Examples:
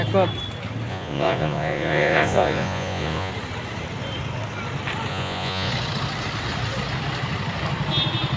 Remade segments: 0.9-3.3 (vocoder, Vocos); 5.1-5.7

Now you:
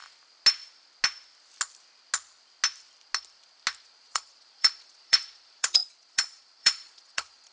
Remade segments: 3.8-7.5 (vocoder, Vocos)